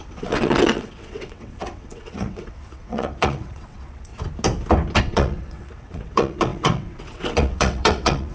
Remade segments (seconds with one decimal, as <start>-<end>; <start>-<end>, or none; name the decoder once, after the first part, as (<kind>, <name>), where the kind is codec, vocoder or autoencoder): 0.0-4.1 (vocoder, WaveNeXt); 5.0-8.3